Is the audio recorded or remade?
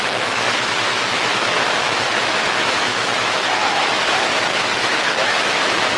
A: remade